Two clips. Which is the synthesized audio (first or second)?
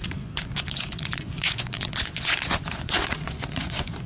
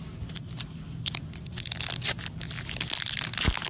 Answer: first